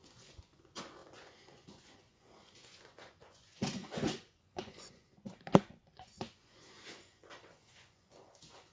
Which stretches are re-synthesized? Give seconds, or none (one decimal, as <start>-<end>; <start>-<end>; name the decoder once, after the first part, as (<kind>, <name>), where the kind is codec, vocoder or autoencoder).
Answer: 0.0-8.7 (vocoder, Vocos)

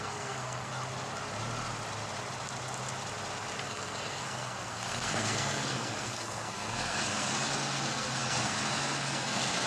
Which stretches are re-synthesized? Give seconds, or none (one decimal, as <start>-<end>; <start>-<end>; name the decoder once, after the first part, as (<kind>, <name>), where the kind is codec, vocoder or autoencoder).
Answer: 0.0-0.7 (codec, SNAC); 3.6-9.7